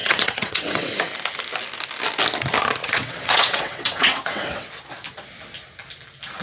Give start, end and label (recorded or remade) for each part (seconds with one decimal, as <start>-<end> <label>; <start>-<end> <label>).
0.0-0.9 remade; 0.9-2.8 recorded; 2.8-4.7 remade; 4.7-6.4 recorded